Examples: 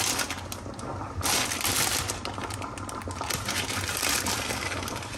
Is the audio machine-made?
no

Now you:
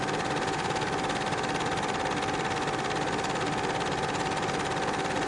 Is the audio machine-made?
no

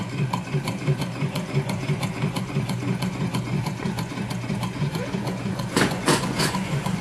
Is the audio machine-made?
yes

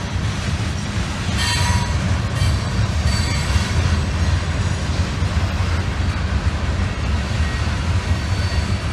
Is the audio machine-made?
no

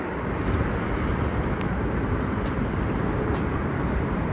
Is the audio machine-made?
yes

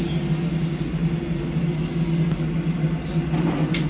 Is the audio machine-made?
no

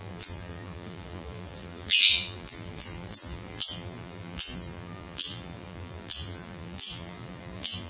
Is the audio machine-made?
yes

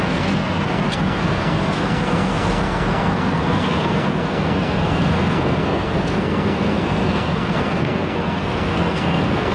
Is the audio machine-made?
yes